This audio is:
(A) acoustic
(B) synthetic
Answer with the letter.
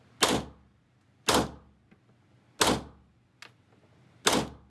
A